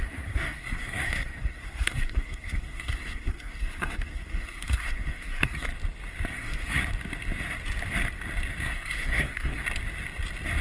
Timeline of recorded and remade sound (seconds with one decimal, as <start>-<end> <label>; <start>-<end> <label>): 0.0-5.7 remade; 5.7-6.3 recorded; 6.3-6.8 remade; 6.8-8.6 recorded; 8.6-9.6 remade; 9.6-10.6 recorded